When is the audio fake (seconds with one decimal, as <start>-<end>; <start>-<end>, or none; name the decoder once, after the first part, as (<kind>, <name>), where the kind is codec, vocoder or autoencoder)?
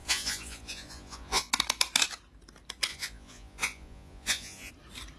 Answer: 0.0-1.5 (vocoder, Vocos); 2.9-4.7